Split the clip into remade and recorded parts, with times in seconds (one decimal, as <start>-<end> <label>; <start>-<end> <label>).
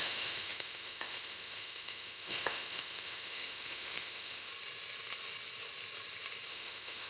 0.0-4.5 remade; 4.5-6.5 recorded; 6.5-7.1 remade